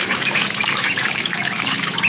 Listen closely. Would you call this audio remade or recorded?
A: remade